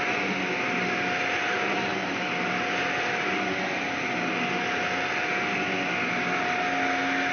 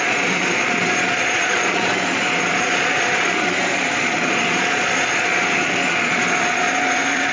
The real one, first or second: first